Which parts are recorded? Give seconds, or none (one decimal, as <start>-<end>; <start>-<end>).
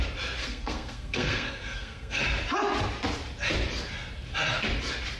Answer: 0.0-0.4; 2.2-5.2